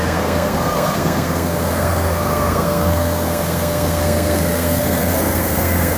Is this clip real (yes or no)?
no